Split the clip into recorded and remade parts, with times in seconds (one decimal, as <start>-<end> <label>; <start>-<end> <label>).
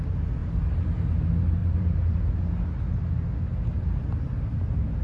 0.0-1.6 recorded; 1.6-2.2 remade; 2.2-5.0 recorded